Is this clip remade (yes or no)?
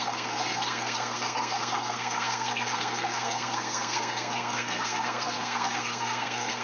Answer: yes